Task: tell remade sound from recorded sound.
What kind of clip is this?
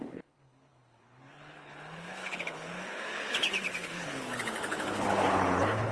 remade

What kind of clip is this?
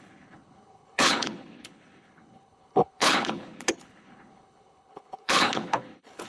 remade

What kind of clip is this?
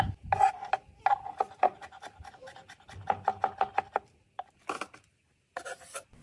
recorded